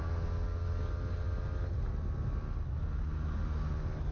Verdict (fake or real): real